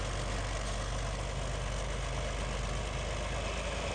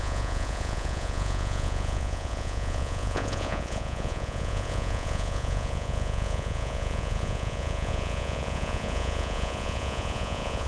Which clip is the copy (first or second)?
second